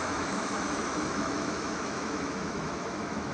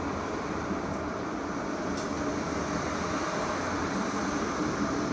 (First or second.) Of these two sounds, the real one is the second